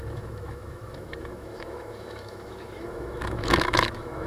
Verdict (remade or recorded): remade